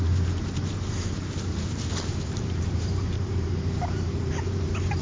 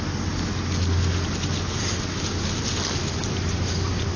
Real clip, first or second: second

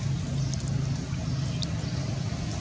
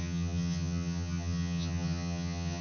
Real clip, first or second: first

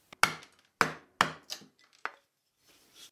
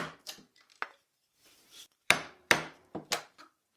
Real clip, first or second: first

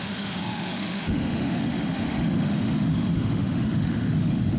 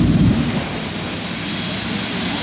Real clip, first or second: second